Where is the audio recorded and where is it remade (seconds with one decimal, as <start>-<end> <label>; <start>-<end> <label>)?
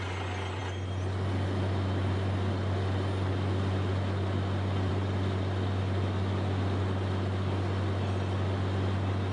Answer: 0.0-9.3 recorded